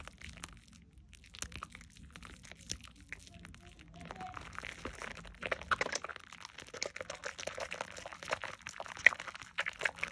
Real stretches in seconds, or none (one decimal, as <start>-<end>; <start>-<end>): 0.0-10.1